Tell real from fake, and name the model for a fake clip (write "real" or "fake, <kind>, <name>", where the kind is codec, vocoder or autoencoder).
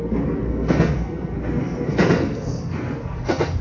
fake, codec, SNAC